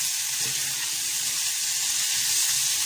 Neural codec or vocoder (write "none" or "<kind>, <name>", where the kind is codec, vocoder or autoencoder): none